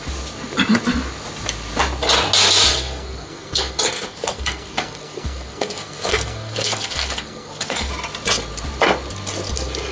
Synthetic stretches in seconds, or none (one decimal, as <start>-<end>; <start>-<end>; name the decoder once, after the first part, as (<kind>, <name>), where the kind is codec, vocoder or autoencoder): 2.7-7.9 (codec, SNAC)